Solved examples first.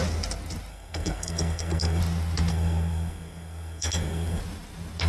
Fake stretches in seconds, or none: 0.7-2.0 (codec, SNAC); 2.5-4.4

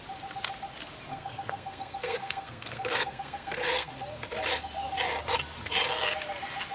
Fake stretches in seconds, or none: 1.1-3.9 (codec, SNAC)

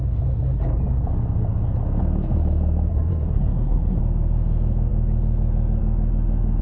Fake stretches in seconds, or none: 2.9-4.0 (codec, SNAC)

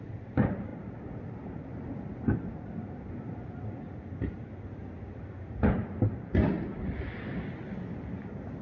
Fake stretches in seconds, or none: 0.0-5.8 (vocoder, BigVGAN v2)

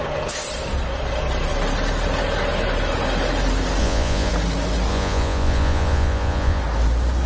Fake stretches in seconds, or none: 3.8-4.3 (vocoder, Vocos); 4.9-6.6